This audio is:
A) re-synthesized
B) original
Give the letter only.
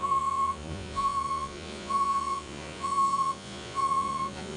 A